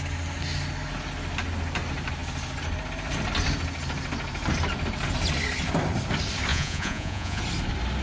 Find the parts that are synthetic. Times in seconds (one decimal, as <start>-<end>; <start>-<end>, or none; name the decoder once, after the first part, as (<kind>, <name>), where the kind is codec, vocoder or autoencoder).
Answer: 6.5-7.4 (vocoder, Vocos)